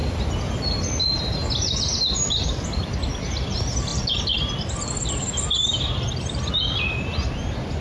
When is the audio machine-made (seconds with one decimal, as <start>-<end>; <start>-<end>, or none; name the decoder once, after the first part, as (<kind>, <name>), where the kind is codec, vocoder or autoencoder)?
3.9-6.5 (vocoder, BigVGAN v2)